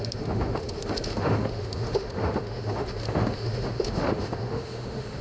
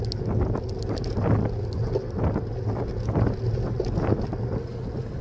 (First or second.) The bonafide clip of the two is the second